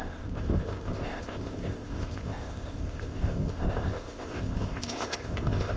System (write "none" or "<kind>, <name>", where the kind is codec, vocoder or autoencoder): codec, ZipCodec